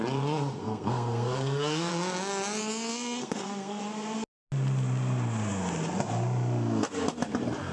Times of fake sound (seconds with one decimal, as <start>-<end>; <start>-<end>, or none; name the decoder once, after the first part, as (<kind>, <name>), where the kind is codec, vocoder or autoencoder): 0.6-1.9 (codec, SNAC); 2.9-3.8